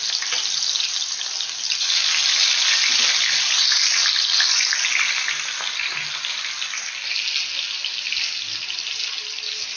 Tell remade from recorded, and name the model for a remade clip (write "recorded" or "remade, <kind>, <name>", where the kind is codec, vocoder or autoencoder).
recorded